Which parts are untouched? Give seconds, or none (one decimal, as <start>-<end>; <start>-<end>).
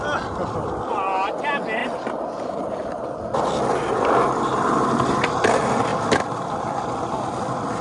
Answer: 0.0-1.8; 4.1-5.9